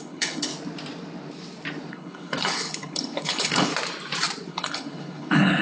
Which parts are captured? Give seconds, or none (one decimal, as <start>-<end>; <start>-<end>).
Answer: 0.5-1.9; 3.7-4.5